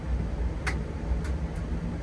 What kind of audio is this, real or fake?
real